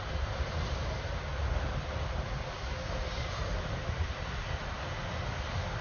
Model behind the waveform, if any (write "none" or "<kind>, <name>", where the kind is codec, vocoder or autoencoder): none